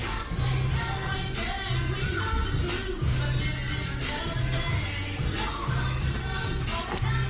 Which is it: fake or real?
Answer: real